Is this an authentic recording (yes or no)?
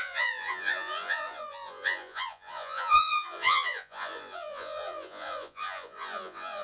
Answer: no